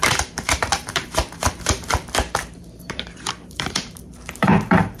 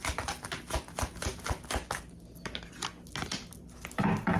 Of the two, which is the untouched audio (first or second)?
second